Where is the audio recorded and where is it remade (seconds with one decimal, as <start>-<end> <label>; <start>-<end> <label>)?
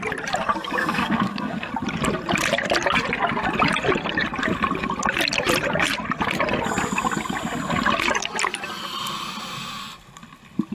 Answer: 0.0-0.8 recorded; 0.8-1.7 remade; 1.7-10.7 recorded